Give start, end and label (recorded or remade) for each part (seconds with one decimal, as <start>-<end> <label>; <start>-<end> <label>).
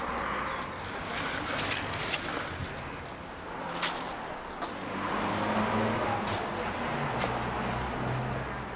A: 0.0-8.8 recorded